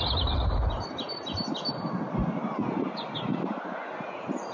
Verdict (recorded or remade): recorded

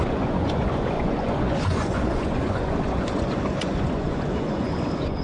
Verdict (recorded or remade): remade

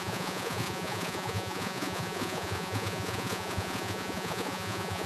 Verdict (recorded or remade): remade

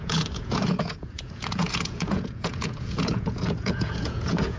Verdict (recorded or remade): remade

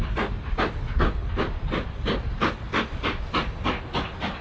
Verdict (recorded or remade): recorded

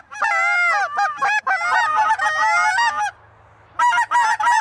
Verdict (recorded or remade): recorded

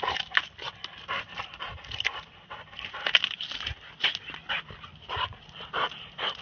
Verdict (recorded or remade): recorded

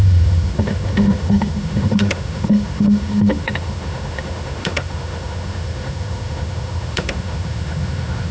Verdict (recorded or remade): remade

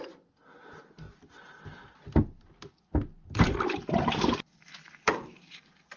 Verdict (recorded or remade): recorded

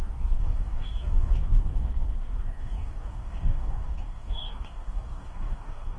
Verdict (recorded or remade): remade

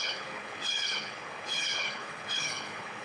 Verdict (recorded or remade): remade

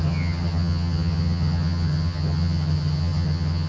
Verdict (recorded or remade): remade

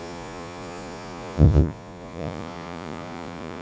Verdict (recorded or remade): remade